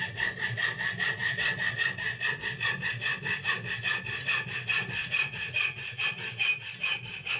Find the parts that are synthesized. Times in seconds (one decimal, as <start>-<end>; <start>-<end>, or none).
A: 5.0-6.0